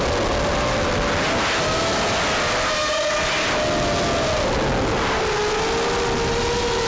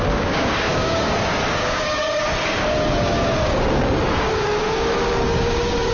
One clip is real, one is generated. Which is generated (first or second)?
second